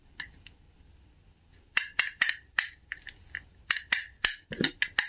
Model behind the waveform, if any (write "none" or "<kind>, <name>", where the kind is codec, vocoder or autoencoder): none